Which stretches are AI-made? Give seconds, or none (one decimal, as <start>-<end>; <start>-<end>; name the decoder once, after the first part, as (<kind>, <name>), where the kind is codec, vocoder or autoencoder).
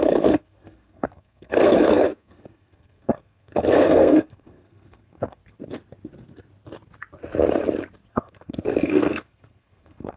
0.0-5.4 (codec, SNAC); 8.1-10.2